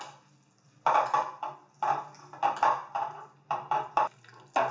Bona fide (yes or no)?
yes